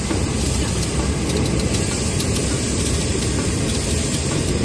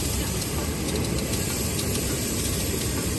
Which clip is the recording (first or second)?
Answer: first